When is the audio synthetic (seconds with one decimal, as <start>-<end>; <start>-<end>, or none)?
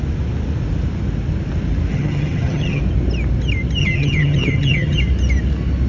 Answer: 1.9-2.8; 3.8-5.0